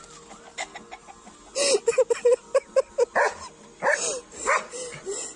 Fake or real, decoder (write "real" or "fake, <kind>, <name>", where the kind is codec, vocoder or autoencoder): real